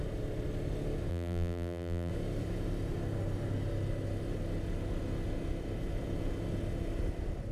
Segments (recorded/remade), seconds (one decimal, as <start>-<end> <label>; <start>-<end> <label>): 0.0-1.1 recorded; 1.1-2.1 remade; 2.1-7.5 recorded